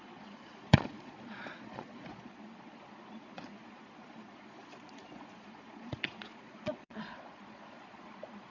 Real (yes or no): no